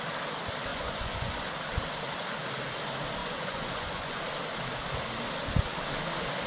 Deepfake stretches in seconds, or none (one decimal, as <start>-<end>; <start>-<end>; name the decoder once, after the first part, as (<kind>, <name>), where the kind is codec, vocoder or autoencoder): 0.7-1.5 (vocoder, Vocos); 3.2-4.2